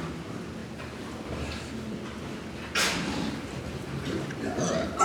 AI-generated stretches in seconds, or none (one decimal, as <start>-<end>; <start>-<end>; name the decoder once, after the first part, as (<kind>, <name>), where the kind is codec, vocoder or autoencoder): none